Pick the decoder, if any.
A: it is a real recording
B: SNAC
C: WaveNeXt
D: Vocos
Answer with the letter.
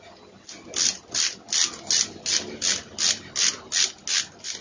A